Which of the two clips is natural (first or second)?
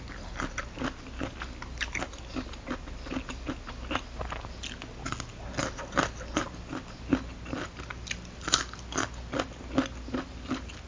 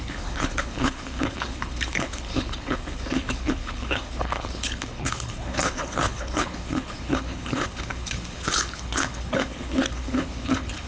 first